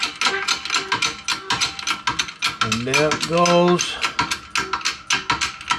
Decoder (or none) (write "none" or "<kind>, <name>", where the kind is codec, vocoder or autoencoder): none